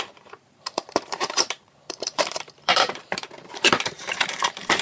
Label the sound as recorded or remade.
remade